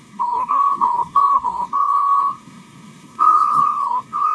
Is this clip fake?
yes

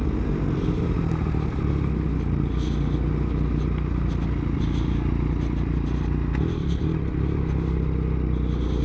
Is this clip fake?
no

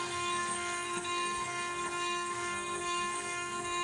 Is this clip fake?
yes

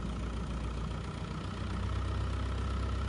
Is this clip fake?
no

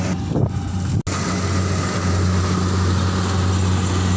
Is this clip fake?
no